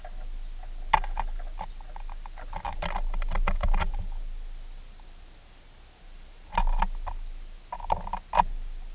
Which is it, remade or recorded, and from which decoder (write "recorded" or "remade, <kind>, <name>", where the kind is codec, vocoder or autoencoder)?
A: recorded